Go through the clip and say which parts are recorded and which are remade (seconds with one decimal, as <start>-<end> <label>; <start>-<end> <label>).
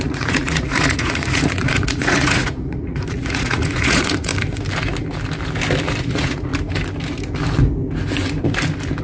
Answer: 0.0-4.3 remade; 4.3-6.0 recorded; 6.0-6.5 remade; 6.5-9.0 recorded